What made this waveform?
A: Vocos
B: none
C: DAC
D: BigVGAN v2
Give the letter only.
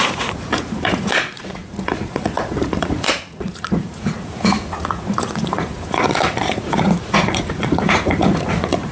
A